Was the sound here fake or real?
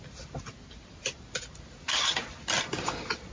real